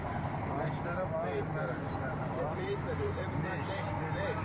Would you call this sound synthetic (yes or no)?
yes